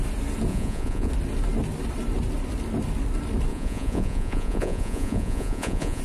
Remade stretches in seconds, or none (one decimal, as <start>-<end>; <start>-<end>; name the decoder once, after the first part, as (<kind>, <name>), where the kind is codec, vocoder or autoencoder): 0.5-1.1 (vocoder, Vocos); 3.5-6.0